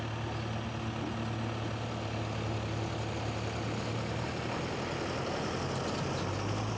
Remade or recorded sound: recorded